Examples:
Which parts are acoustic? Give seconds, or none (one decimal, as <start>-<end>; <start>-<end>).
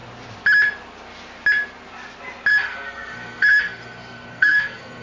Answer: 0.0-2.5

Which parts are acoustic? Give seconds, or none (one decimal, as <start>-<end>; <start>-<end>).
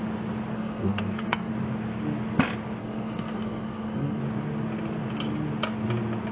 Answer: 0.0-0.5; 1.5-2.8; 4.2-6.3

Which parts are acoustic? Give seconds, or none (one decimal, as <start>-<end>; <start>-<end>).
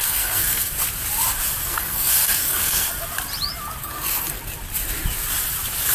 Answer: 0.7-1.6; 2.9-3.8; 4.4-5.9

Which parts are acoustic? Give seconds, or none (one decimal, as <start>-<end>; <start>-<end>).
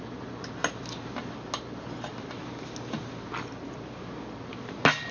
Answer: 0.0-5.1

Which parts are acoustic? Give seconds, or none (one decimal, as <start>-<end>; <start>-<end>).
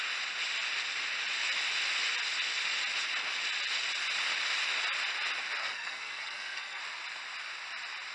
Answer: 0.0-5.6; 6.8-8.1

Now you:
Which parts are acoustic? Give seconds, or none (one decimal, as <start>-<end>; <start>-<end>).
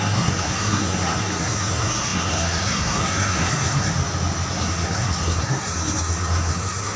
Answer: 3.9-4.5